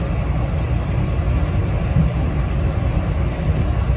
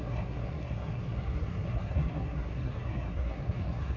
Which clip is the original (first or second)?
first